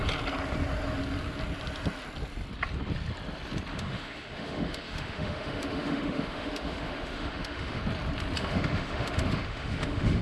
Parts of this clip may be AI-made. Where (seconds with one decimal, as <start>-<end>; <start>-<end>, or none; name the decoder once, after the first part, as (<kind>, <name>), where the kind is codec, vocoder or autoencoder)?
3.7-7.8 (autoencoder, DAC-VAE); 8.4-10.2